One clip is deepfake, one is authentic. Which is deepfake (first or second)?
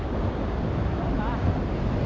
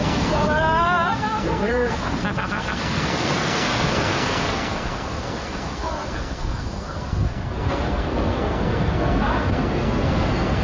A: second